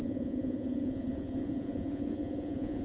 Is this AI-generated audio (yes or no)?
yes